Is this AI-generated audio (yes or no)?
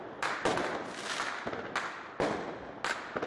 no